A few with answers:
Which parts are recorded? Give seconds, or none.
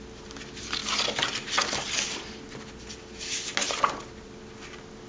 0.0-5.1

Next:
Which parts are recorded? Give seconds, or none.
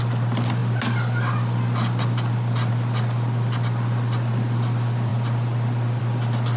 0.0-6.6